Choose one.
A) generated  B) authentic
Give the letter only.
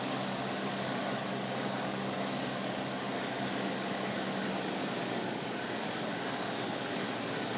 A